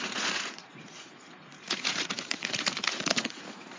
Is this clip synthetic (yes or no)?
yes